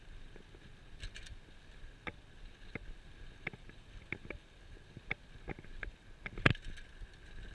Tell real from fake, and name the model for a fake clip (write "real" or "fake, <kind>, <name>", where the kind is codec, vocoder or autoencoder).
real